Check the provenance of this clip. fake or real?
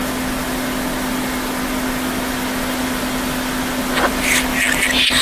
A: real